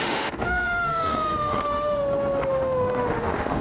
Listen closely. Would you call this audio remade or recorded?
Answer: remade